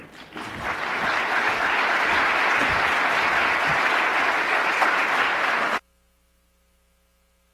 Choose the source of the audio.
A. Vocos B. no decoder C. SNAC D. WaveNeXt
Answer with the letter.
B